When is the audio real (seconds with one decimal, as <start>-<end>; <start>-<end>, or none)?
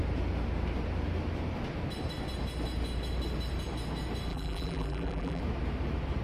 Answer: 0.0-4.3; 5.4-6.2